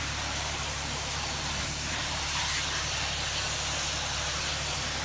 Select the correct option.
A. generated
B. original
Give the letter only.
B